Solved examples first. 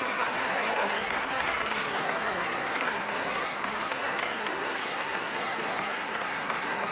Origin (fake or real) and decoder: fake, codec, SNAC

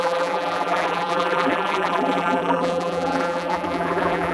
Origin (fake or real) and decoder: fake, vocoder, BigVGAN v2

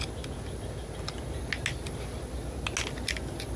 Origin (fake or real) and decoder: real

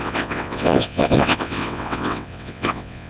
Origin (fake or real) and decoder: fake, vocoder, WaveNeXt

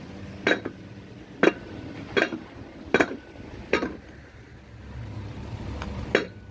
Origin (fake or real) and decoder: real